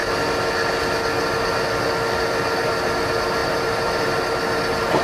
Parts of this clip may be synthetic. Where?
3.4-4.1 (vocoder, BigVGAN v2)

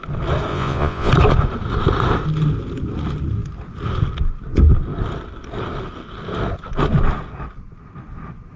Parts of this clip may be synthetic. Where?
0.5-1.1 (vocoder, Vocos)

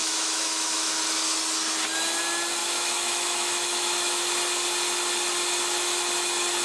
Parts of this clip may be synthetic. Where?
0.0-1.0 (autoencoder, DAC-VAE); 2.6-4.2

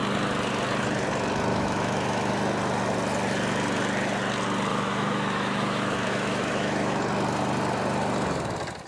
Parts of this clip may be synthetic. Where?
1.5-2.3 (autoencoder, DAC-VAE); 4.7-7.0

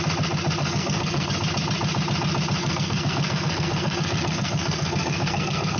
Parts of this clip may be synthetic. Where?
0.6-1.3 (codec, SNAC); 2.6-5.8

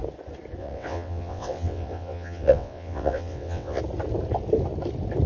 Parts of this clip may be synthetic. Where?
0.6-3.8 (vocoder, WaveNeXt)

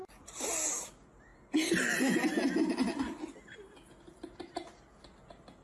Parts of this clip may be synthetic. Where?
none